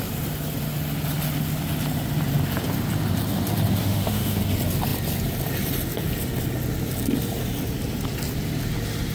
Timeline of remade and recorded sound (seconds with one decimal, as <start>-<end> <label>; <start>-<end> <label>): 0.0-3.8 recorded; 3.8-4.4 remade; 4.4-9.1 recorded